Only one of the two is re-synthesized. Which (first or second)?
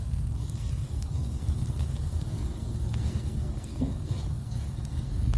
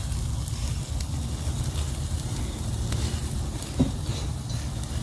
first